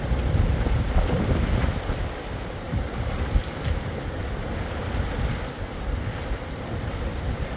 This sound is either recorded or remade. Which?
recorded